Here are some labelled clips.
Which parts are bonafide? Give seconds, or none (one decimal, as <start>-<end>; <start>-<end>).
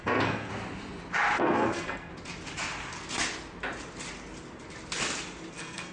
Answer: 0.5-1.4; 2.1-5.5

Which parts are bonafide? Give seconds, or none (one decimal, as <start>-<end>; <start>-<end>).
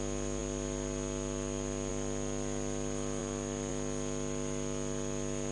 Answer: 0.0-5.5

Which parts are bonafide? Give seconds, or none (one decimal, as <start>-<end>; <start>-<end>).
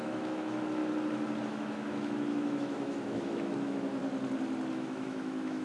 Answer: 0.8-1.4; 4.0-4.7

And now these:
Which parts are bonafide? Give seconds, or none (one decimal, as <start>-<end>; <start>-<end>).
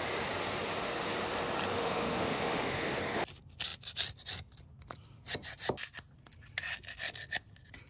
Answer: 0.0-1.7; 3.0-7.9